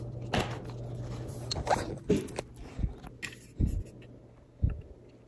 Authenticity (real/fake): real